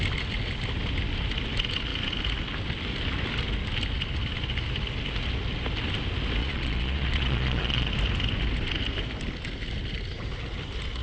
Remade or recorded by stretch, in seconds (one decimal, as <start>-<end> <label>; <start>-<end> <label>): 0.0-6.4 recorded; 6.4-7.9 remade; 7.9-11.0 recorded